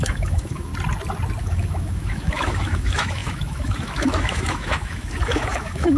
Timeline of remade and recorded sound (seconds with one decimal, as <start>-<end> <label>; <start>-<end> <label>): 0.0-0.7 remade; 0.7-1.4 recorded; 1.4-6.0 remade